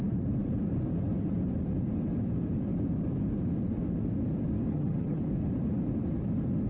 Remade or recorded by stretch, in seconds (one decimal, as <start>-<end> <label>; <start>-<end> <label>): 0.0-4.7 recorded; 4.7-5.2 remade; 5.2-6.7 recorded